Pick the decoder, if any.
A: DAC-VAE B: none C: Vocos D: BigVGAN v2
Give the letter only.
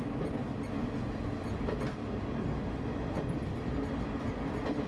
B